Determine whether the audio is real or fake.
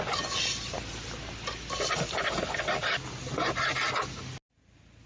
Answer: real